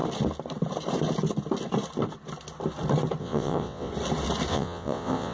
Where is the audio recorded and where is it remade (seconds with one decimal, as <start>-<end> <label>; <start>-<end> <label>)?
0.0-3.2 recorded; 3.2-3.9 remade; 3.9-4.5 recorded; 4.5-5.3 remade